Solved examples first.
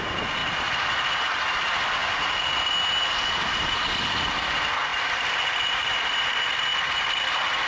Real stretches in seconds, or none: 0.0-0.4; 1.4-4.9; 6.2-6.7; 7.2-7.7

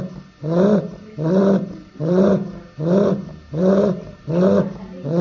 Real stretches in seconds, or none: 0.0-1.4; 2.3-3.6; 4.3-5.2

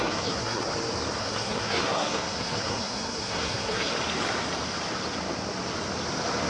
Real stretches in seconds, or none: 0.7-1.2; 3.9-6.5

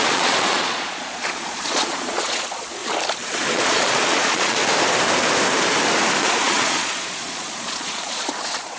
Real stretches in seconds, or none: 2.8-3.5; 4.6-6.2

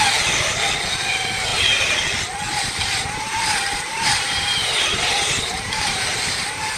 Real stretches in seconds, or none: 0.0-1.5; 2.0-2.5

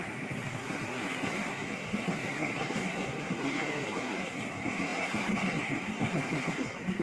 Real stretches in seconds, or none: none